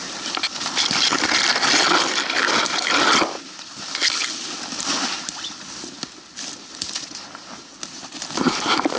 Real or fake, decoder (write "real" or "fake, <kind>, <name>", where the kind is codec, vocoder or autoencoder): real